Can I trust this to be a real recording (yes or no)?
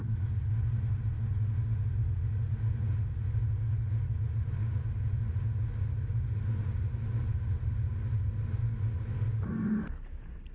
yes